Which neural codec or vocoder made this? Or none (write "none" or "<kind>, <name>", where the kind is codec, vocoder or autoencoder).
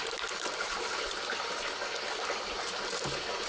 none